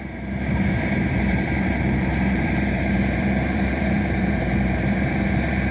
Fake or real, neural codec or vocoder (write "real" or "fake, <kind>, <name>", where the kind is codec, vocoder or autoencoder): fake, vocoder, BigVGAN v2